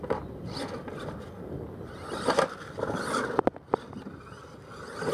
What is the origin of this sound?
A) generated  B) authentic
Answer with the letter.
B